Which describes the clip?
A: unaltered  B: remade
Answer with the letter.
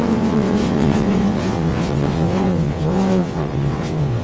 B